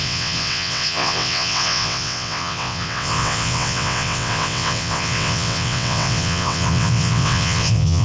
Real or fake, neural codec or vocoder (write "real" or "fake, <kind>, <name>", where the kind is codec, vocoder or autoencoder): fake, vocoder, WaveNeXt